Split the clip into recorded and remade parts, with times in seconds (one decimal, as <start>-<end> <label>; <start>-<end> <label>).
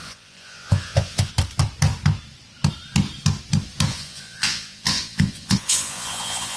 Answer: 0.0-1.3 remade; 1.3-3.9 recorded; 3.9-6.6 remade